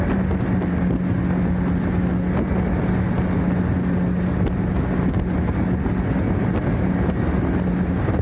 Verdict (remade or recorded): recorded